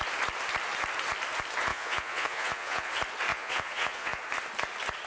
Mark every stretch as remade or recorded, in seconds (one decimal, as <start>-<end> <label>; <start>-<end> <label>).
0.0-1.7 recorded; 1.7-2.9 remade; 2.9-3.3 recorded; 3.3-4.2 remade; 4.2-5.1 recorded